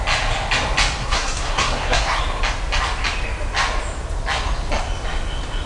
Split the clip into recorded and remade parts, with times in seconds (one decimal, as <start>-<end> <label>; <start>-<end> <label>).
0.0-1.0 recorded; 1.0-2.2 remade; 2.2-5.7 recorded

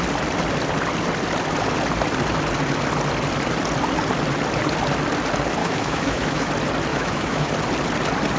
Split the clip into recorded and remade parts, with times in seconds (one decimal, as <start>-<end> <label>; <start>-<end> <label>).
0.0-5.6 recorded; 5.6-6.5 remade; 6.5-6.9 recorded; 6.9-7.5 remade; 7.5-8.4 recorded

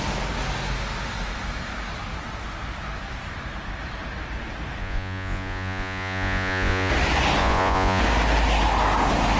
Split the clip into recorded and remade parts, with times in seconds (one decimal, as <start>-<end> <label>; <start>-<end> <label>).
0.0-4.8 recorded; 4.8-6.9 remade; 6.9-7.4 recorded; 7.4-8.0 remade; 8.0-9.4 recorded